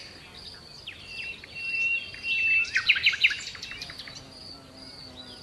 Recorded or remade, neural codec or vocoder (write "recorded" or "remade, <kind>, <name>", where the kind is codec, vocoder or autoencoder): recorded